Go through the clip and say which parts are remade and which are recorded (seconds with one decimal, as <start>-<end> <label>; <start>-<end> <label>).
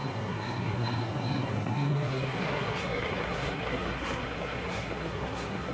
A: 0.0-5.7 remade